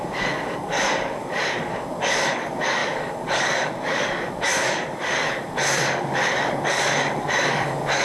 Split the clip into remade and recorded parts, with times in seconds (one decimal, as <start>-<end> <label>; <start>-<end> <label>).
0.0-8.0 remade